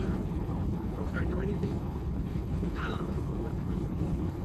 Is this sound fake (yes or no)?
yes